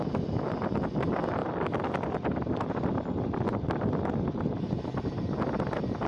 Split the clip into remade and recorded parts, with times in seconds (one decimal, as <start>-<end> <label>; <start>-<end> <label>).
0.0-6.1 recorded